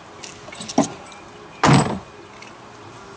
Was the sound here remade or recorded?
recorded